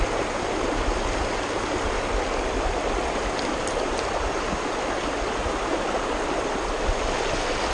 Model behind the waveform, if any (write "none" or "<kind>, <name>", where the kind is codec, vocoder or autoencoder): none